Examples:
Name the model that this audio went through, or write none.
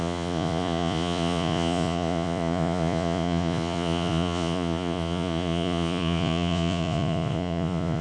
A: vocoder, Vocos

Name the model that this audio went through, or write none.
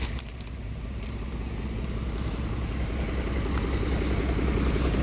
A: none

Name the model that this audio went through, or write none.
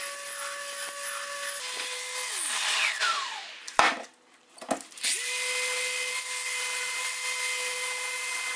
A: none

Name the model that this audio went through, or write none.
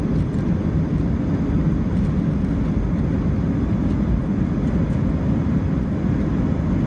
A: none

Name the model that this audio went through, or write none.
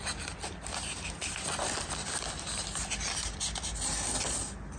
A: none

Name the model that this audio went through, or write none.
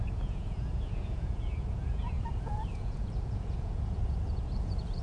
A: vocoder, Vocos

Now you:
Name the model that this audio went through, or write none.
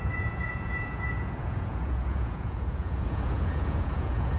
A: vocoder, Vocos